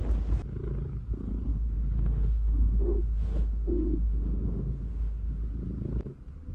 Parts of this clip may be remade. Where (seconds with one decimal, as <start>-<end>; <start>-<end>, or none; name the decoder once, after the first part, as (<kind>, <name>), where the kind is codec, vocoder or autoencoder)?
1.5-5.4 (autoencoder, DAC-VAE)